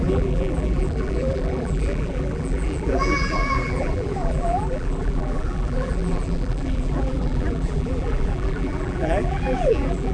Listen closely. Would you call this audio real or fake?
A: fake